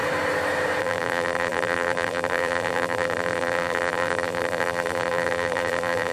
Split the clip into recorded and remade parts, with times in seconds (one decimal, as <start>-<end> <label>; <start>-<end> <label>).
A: 0.0-0.8 recorded; 0.8-6.1 remade